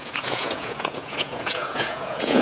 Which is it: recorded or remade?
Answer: remade